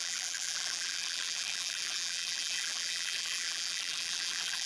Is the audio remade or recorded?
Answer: remade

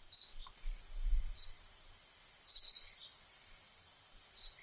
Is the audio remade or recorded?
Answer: recorded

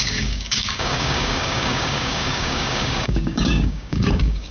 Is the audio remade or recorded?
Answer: remade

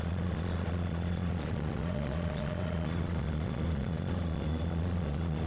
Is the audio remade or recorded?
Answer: remade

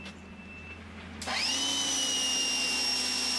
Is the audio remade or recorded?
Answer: recorded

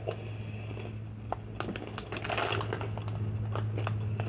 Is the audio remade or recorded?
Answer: recorded